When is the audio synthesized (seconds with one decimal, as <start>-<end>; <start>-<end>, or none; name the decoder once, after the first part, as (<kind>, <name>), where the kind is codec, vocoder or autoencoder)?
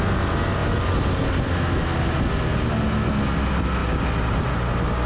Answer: none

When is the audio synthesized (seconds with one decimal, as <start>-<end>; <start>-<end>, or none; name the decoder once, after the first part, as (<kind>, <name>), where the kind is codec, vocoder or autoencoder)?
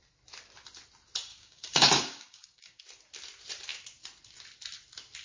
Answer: 1.3-2.8 (codec, DAC)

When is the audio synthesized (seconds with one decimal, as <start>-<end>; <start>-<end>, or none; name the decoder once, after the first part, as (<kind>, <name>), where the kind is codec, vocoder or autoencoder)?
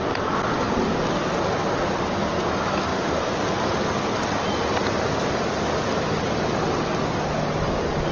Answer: none